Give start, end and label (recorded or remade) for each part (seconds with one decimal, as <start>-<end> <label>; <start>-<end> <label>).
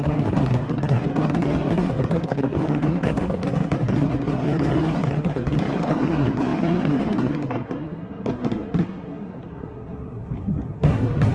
0.0-11.3 remade